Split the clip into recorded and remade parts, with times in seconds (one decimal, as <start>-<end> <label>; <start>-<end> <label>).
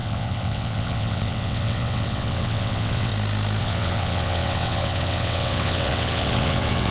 0.0-3.1 remade; 3.1-3.6 recorded; 3.6-6.9 remade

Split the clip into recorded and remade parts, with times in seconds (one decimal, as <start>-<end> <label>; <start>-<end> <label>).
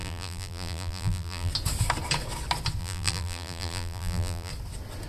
0.0-1.5 remade; 1.5-2.8 recorded; 2.8-4.5 remade; 4.5-5.1 recorded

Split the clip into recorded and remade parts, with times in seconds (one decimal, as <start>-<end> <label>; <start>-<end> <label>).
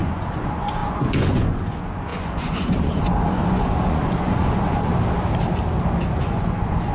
0.0-4.9 remade; 4.9-6.2 recorded; 6.2-6.9 remade